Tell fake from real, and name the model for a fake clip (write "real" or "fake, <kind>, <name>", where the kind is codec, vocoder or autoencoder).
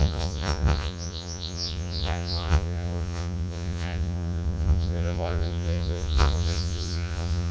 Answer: fake, vocoder, Vocos